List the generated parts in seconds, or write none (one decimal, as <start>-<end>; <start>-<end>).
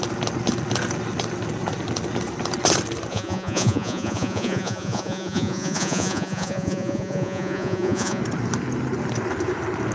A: 3.1-8.2